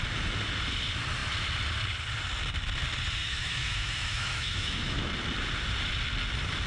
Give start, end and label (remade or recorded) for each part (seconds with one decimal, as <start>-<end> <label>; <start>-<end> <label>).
0.0-3.2 recorded; 3.2-5.1 remade; 5.1-6.7 recorded